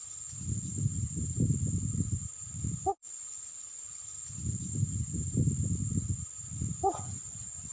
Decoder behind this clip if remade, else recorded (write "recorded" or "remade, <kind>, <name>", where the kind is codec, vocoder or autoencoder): recorded